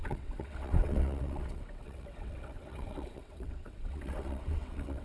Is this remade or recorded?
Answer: remade